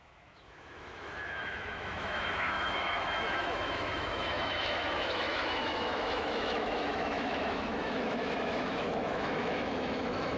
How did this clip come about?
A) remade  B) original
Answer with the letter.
A